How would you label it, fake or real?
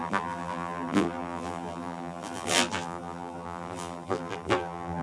fake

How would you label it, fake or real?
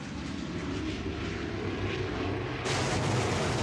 real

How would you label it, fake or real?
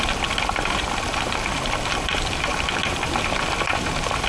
real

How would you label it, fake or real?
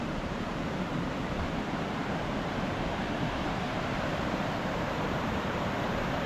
fake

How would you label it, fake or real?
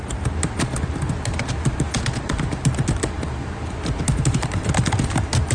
real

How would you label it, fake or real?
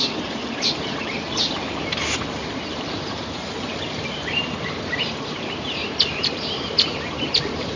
fake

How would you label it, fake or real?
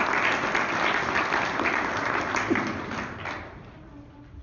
fake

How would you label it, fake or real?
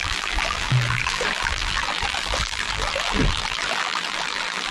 fake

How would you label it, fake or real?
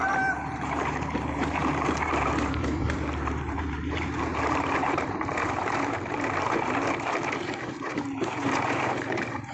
fake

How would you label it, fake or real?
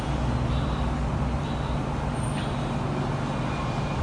real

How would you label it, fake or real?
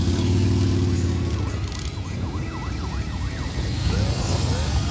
real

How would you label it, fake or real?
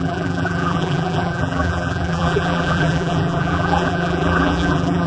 fake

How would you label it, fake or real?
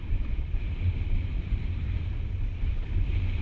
fake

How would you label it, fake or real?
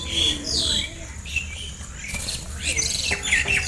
real